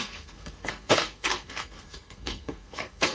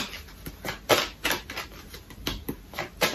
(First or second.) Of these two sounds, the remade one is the first